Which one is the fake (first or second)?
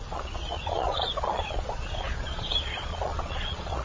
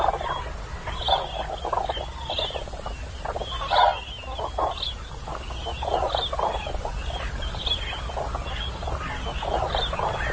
first